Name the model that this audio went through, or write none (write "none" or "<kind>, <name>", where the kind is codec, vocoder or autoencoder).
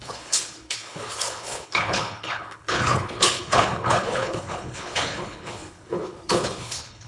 codec, HILCodec